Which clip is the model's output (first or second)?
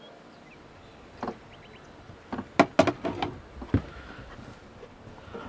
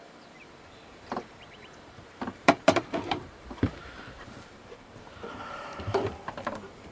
second